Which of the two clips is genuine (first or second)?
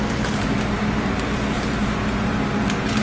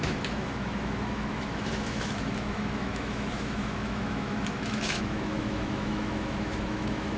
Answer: first